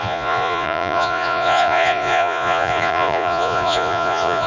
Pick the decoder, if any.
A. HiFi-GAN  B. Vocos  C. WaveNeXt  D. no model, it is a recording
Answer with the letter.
B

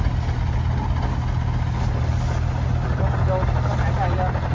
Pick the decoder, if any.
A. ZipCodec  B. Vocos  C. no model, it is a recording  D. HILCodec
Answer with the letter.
C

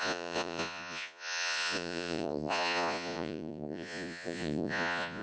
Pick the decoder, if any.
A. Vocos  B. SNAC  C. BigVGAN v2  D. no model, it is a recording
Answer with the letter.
A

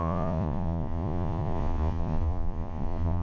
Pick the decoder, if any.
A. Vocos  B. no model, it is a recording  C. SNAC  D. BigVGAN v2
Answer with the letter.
A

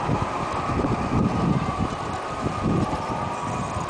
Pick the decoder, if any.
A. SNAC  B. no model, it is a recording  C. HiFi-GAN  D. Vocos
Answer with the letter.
B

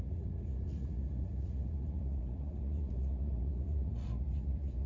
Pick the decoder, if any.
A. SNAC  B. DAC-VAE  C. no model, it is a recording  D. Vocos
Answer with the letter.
D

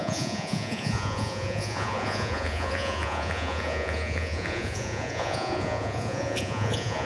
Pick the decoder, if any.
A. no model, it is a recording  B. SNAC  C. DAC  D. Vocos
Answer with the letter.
D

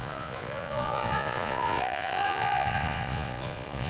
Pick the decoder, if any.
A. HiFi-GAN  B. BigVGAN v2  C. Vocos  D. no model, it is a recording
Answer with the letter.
C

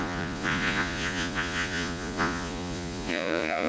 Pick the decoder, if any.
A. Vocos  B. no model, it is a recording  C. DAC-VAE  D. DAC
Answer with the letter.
A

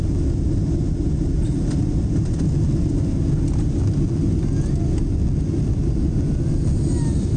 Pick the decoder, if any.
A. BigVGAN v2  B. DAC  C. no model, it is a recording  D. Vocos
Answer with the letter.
C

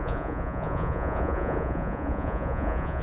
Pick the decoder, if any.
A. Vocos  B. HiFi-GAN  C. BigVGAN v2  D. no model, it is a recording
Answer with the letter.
A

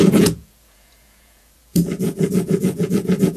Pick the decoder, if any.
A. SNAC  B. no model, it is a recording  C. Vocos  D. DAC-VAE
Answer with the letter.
C